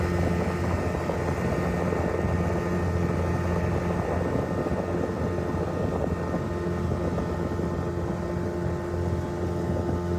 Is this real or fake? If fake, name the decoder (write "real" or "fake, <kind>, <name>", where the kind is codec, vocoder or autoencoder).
real